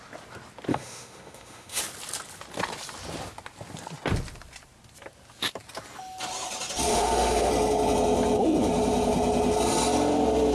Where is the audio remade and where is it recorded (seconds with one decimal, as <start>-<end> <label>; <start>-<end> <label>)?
0.0-0.7 recorded; 0.7-1.8 remade; 1.8-6.9 recorded; 6.9-7.5 remade; 7.5-10.5 recorded